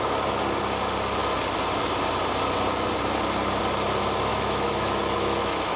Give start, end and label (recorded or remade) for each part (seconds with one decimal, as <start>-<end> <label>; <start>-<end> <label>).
0.0-4.3 recorded; 4.3-5.8 remade